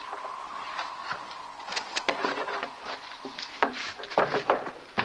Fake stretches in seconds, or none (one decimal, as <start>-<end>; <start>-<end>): 1.0-4.0